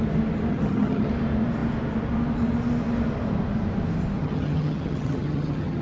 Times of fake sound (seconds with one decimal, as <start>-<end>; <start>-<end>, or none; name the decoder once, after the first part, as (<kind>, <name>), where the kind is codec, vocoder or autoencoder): 0.5-1.1 (vocoder, HiFi-GAN); 4.2-5.8